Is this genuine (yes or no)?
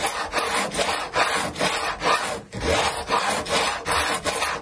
yes